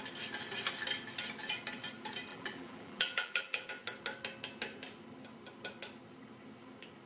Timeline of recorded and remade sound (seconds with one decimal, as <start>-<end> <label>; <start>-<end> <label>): 0.0-2.3 recorded; 2.3-3.7 remade; 3.7-7.1 recorded